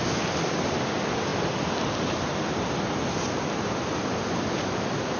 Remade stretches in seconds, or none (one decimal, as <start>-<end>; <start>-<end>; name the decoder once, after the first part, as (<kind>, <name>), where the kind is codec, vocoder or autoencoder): none